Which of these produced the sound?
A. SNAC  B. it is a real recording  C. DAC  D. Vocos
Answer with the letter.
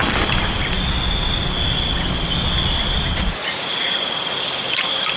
B